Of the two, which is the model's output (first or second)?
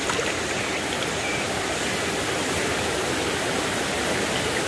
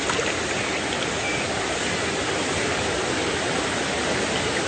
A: first